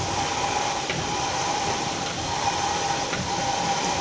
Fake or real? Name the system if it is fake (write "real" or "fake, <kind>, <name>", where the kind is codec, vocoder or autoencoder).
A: real